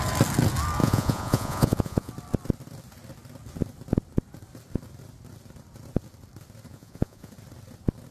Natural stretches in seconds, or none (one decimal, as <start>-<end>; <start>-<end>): 0.0-0.8; 2.1-6.7; 7.3-8.1